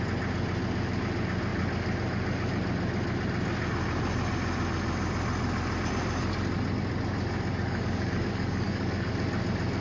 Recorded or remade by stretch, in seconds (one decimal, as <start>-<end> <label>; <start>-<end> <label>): 0.0-7.5 recorded; 7.5-9.1 remade; 9.1-9.8 recorded